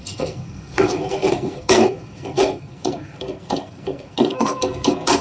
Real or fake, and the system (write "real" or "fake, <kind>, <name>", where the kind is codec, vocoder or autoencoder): fake, codec, SNAC